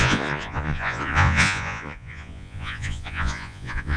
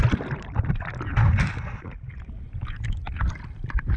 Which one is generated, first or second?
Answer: first